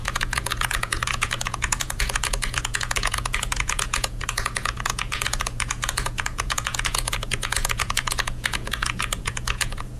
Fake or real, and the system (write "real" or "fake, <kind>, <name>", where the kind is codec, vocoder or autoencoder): fake, vocoder, Vocos